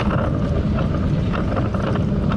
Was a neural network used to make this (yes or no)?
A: no